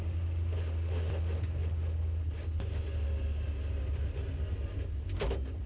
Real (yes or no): yes